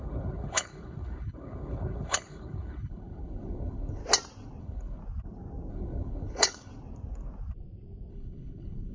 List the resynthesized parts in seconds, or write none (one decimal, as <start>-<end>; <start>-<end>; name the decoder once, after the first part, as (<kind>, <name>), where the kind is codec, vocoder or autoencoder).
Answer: 0.0-4.0 (codec, HILCodec); 4.6-5.0; 5.7-6.7; 8.1-8.9